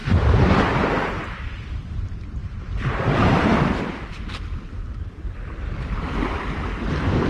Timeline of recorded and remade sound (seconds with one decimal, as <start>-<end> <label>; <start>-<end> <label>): 0.0-1.1 recorded; 1.1-3.5 remade; 3.5-7.3 recorded